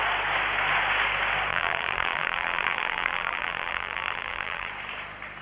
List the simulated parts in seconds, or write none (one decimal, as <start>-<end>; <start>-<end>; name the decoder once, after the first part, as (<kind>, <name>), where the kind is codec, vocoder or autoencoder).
1.5-4.7 (vocoder, BigVGAN v2)